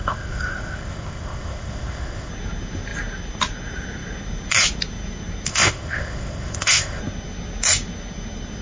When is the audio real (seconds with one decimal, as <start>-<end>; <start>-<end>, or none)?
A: 2.3-5.5; 7.0-8.6